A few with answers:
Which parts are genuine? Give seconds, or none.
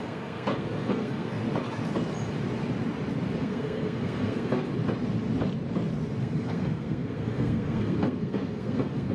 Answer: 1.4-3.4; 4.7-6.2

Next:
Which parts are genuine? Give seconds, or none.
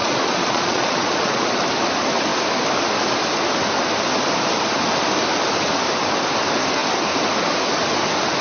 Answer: 1.5-8.4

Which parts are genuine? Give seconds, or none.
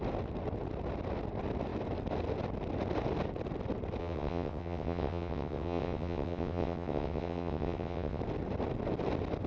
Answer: 0.0-4.0; 8.2-9.5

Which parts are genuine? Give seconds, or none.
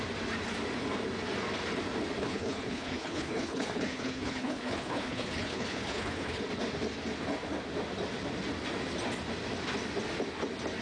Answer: 0.0-2.2; 6.4-10.8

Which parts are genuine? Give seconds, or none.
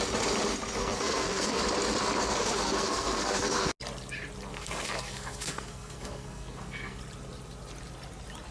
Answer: 0.0-0.8; 1.6-2.2; 3.7-4.5; 7.0-8.5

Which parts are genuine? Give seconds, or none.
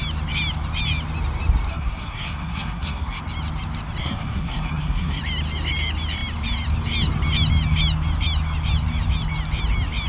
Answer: 0.0-1.7; 3.2-4.0; 5.2-10.1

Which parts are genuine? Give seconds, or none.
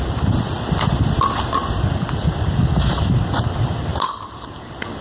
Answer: 0.0-5.0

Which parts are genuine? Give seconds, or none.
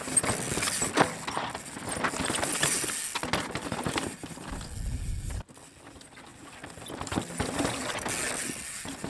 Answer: 0.0-9.1